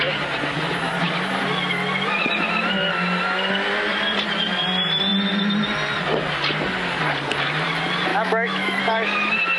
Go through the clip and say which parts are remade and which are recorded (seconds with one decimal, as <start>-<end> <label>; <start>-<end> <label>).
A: 0.0-8.1 recorded; 8.1-8.8 remade; 8.8-9.6 recorded